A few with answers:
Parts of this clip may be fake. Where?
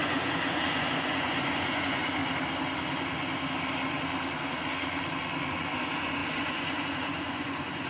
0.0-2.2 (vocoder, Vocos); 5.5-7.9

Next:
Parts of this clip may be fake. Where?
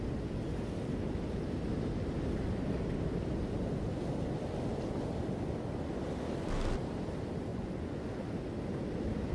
7.5-8.0 (vocoder, Vocos)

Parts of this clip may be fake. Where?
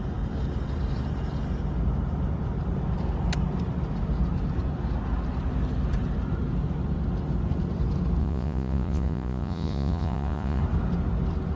8.2-10.6 (vocoder, Vocos)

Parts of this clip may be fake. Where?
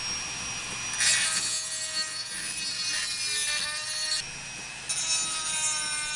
none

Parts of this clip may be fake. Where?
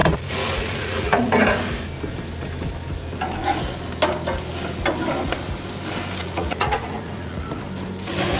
0.0-1.3 (vocoder, Vocos); 6.2-7.6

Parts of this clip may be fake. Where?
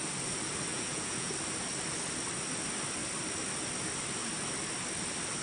0.7-1.3 (vocoder, Vocos)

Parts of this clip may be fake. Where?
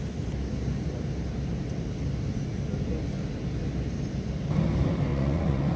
5.1-5.8 (vocoder, Vocos)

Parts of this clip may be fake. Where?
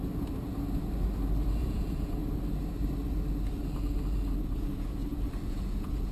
1.6-2.2 (vocoder, Vocos); 4.3-5.0; 5.5-6.1